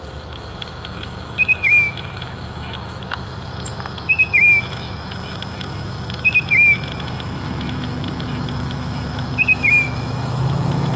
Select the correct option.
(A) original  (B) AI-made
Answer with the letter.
B